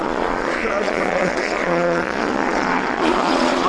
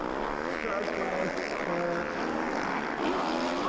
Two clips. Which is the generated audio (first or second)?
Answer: first